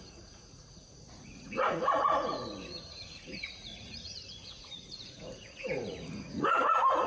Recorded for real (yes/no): no